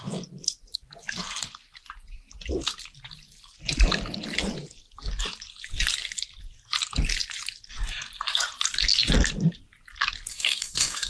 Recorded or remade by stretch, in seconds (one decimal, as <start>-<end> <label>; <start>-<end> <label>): 0.0-10.3 recorded; 10.3-11.1 remade